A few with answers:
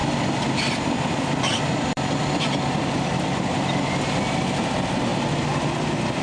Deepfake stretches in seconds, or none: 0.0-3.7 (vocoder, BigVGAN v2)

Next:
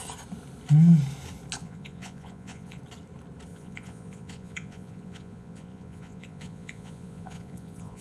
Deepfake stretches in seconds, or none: 1.6-2.8 (vocoder, Vocos); 3.5-8.0

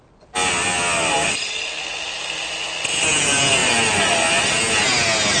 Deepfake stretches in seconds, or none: none

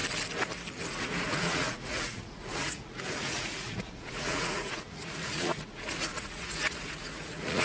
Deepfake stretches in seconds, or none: 0.9-7.6 (vocoder, Vocos)

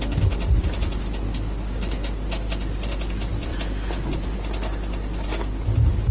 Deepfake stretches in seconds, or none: 0.0-6.1 (vocoder, BigVGAN v2)

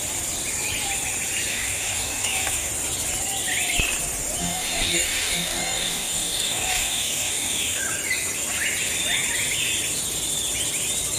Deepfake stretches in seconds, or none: 1.5-2.7 (codec, DAC); 4.4-7.8